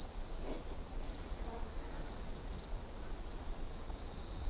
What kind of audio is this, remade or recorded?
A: remade